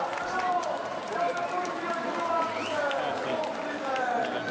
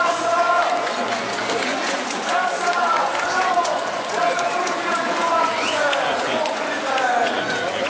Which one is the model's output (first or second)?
second